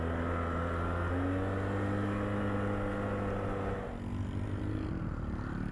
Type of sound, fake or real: real